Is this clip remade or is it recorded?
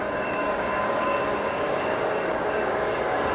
remade